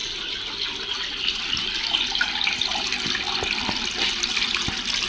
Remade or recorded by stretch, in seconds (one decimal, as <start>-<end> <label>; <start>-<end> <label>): 0.0-5.1 recorded